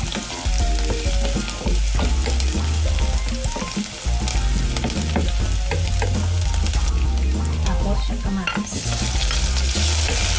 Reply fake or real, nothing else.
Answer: real